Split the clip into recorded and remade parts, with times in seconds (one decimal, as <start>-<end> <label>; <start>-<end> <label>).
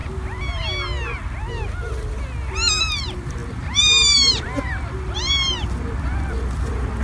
0.0-2.7 recorded; 2.7-7.0 remade